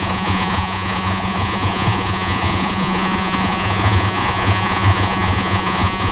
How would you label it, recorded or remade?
remade